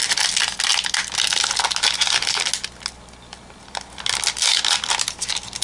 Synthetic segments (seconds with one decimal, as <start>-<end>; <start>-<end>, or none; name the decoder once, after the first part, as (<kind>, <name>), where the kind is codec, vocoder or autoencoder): none